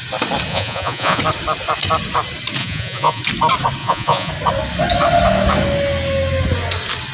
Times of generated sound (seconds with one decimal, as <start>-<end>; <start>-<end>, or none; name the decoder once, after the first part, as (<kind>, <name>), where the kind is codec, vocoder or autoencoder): 0.5-1.2 (vocoder, Vocos); 2.6-3.2; 3.8-4.3